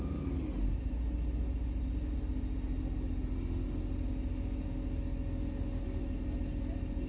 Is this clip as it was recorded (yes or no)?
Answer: yes